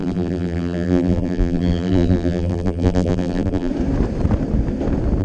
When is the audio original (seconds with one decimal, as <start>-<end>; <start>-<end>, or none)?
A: 3.7-5.2